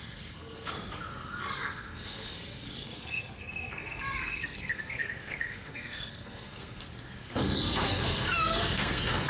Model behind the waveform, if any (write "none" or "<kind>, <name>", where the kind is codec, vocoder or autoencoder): codec, SNAC